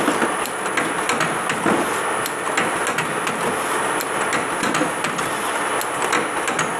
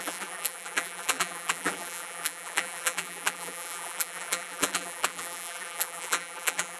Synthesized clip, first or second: second